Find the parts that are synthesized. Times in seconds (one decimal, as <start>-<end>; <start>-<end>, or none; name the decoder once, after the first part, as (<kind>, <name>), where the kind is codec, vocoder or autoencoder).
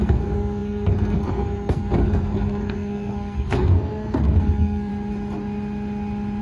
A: 0.0-4.9 (codec, SNAC)